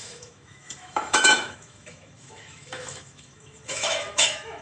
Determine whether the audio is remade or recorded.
remade